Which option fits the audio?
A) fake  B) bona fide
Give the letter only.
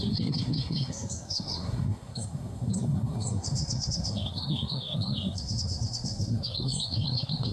A